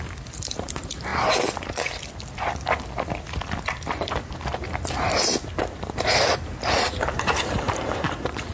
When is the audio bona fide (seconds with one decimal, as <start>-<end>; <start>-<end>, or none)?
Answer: 1.1-6.0